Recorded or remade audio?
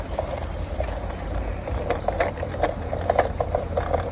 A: remade